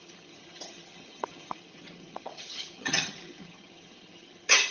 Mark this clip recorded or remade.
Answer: remade